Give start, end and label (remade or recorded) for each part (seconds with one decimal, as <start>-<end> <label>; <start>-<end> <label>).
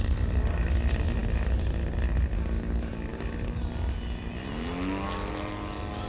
0.0-6.1 recorded